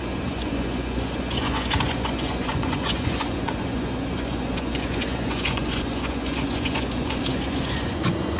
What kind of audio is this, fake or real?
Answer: fake